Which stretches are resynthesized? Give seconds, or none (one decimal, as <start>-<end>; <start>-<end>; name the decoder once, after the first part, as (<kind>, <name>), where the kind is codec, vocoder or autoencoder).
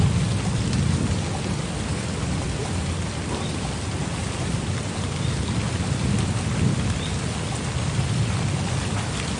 4.1-4.7 (vocoder, BigVGAN v2)